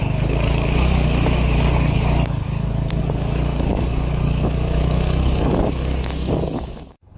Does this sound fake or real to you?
fake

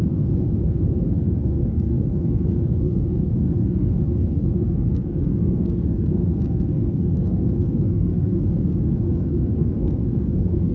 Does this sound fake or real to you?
fake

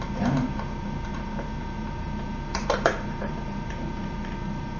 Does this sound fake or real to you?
fake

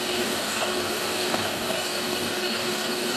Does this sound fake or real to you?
fake